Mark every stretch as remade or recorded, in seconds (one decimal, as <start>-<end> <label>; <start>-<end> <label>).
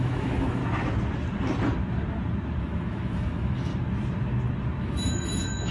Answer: 0.0-0.6 remade; 0.6-2.6 recorded; 2.6-3.7 remade; 3.7-4.8 recorded; 4.8-5.7 remade